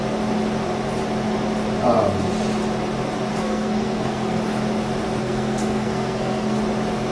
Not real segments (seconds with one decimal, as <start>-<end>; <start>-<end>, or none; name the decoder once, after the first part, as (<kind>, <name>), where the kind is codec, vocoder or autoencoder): 3.3-4.4 (codec, SNAC); 5.2-6.6